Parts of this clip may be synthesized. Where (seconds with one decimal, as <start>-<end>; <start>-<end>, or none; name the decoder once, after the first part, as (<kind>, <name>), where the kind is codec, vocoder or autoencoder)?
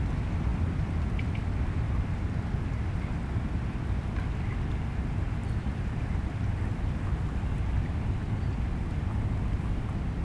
none